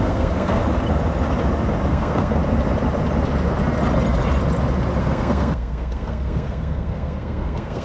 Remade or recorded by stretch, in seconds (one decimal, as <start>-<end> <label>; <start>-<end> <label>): 0.0-0.6 remade; 0.6-1.9 recorded; 1.9-2.4 remade; 2.4-5.0 recorded; 5.0-7.8 remade